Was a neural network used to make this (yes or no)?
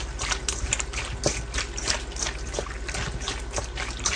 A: no